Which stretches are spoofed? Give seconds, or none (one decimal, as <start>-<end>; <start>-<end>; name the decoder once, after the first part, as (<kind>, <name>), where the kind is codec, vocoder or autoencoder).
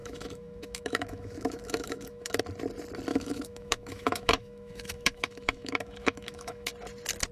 0.0-2.4 (autoencoder, DAC-VAE); 3.1-6.7